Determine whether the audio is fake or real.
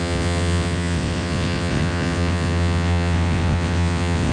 fake